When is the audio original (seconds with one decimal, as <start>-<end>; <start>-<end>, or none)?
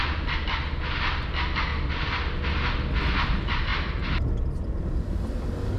0.0-1.7; 2.6-5.8